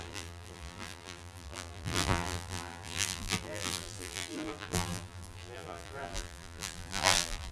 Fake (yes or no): yes